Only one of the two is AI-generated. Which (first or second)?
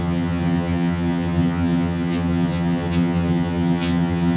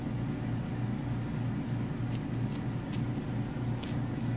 first